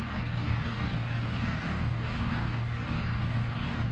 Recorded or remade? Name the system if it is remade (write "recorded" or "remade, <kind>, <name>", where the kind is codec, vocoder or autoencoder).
remade, codec, DAC